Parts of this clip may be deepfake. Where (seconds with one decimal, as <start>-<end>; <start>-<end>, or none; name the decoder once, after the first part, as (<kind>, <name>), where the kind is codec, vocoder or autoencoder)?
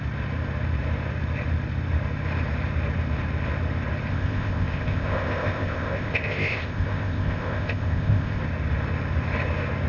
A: 4.1-8.4 (codec, ZipCodec)